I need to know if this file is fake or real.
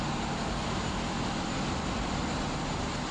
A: real